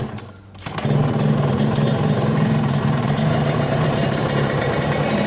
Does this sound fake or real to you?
fake